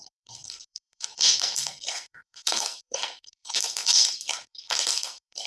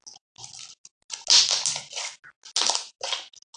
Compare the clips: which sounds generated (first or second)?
first